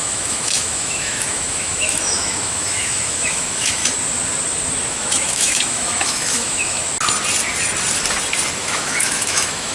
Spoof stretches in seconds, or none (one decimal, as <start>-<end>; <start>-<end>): 0.0-3.8; 4.9-6.9; 8.6-9.7